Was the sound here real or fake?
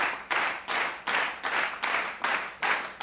real